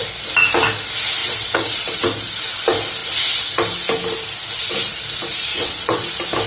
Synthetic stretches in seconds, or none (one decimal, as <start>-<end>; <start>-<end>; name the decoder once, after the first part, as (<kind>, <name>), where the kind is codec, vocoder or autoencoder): 1.2-2.0 (vocoder, WaveNeXt); 5.5-6.1